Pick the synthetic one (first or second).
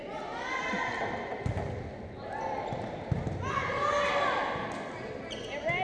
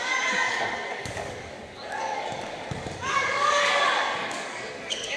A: second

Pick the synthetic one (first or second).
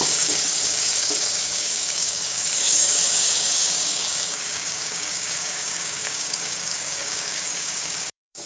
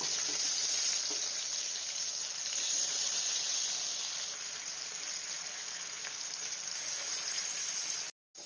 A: first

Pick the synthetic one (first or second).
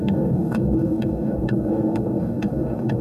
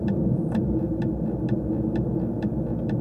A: first